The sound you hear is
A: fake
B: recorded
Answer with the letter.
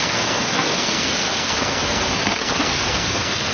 A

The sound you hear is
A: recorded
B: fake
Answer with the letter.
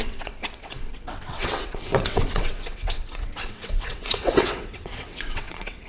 B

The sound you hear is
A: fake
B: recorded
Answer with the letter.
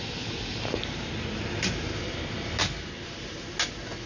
B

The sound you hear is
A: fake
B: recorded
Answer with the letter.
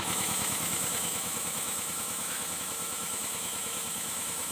A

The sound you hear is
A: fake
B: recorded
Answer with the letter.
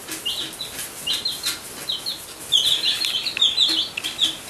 B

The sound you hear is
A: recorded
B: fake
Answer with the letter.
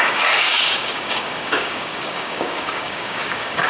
B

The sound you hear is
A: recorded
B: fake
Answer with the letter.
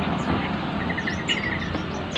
A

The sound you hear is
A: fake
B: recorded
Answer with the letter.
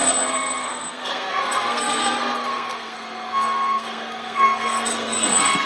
A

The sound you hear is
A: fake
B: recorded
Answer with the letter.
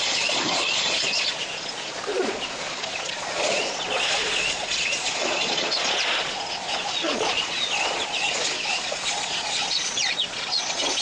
A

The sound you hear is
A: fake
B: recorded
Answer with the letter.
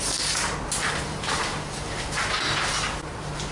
B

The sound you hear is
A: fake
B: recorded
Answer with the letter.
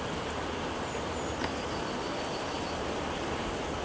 B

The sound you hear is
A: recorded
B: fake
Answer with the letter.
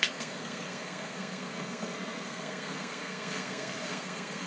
B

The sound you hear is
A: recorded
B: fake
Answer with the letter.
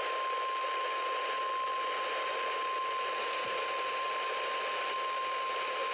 A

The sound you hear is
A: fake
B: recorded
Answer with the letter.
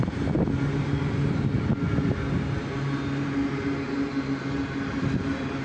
B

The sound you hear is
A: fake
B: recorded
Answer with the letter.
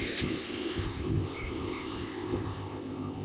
A